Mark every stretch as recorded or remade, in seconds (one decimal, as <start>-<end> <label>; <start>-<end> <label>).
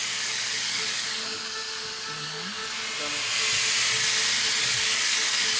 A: 0.0-2.6 remade; 2.6-4.6 recorded; 4.6-5.6 remade